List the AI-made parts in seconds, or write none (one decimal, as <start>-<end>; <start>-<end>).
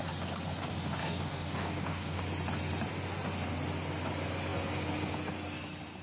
1.0-2.2